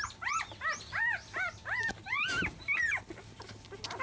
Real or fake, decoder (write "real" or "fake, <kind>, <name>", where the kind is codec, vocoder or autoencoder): real